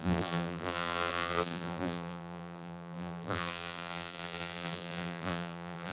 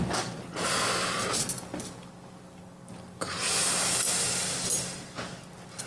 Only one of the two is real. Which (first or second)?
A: second